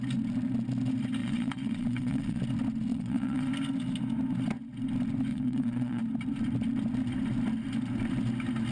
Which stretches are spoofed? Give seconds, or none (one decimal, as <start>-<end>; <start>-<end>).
1.2-2.4; 2.9-3.5; 5.3-6.0